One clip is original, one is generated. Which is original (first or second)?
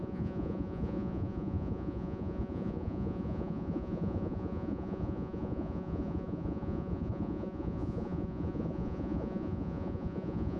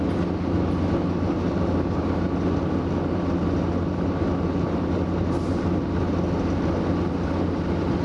second